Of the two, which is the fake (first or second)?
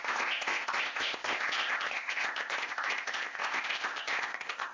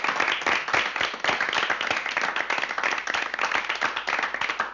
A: first